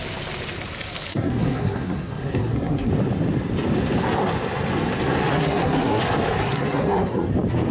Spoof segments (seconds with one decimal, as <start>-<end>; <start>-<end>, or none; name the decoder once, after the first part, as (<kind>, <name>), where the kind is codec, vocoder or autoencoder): 1.1-2.9 (codec, SNAC); 5.3-6.0; 6.4-7.3